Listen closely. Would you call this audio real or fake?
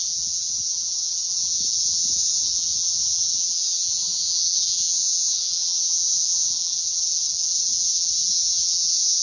fake